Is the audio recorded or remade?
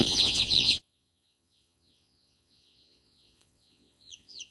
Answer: remade